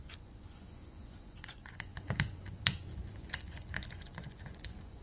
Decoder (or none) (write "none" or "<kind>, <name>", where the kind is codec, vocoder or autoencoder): vocoder, Vocos